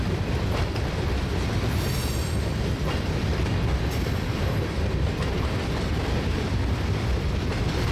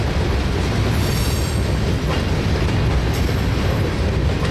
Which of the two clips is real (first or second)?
second